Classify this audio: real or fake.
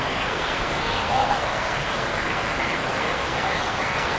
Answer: fake